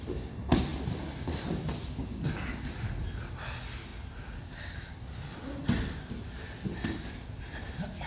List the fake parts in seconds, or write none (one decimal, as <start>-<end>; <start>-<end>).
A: none